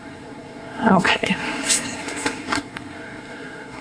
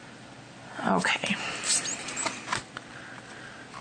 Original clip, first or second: second